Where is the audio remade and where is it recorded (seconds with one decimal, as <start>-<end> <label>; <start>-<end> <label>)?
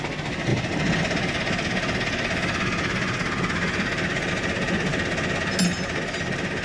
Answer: 0.0-6.6 recorded